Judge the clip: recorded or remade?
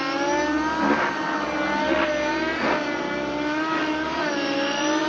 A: recorded